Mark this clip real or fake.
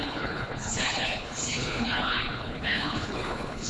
fake